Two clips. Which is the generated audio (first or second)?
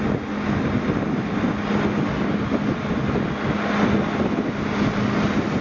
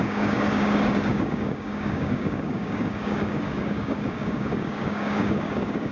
second